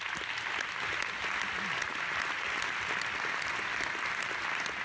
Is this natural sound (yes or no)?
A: yes